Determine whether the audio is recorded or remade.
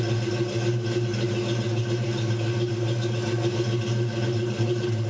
recorded